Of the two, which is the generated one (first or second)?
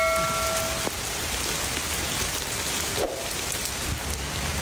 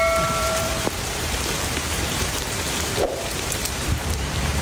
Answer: second